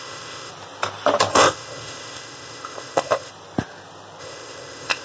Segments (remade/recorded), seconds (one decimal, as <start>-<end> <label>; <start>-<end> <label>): 0.0-0.5 remade; 0.5-1.3 recorded; 1.3-3.3 remade; 3.3-4.2 recorded; 4.2-5.0 remade